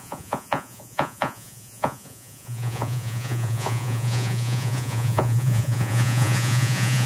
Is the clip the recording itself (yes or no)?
no